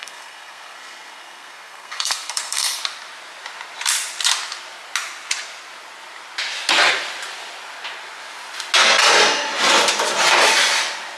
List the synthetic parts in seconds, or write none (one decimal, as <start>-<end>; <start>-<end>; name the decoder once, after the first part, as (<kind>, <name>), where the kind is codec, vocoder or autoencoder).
0.0-2.8 (codec, SNAC)